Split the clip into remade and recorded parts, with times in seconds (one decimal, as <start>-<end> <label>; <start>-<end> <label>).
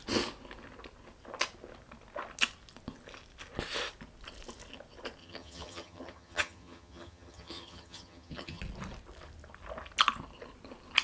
0.0-5.2 recorded; 5.2-8.6 remade; 8.6-11.0 recorded